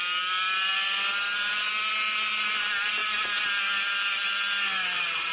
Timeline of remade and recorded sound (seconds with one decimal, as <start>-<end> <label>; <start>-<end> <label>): 0.0-5.3 recorded